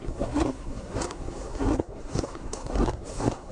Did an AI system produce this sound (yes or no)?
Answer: yes